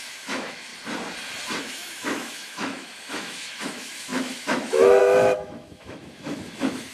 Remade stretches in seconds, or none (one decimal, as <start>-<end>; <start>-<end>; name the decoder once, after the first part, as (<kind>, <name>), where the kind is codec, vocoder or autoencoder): 0.0-0.7 (autoencoder, DAC-VAE); 1.6-6.9